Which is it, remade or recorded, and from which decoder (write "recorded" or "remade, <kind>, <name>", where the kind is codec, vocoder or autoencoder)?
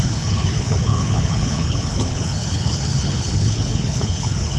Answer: remade, codec, HILCodec